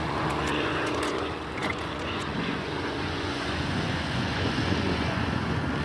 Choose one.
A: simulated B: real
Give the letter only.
A